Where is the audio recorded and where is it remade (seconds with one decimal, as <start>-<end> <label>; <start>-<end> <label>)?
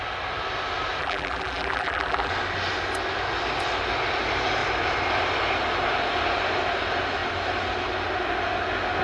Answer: 0.0-1.0 recorded; 1.0-2.3 remade; 2.3-9.0 recorded